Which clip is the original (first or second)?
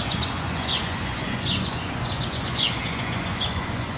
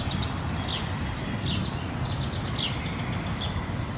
second